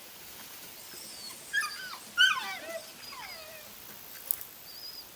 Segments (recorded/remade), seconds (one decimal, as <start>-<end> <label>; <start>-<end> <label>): 0.0-0.7 remade; 0.7-5.2 recorded